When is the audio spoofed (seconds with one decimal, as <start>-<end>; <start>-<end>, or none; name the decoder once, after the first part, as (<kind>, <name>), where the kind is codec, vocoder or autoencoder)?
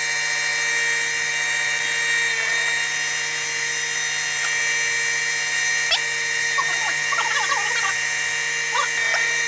none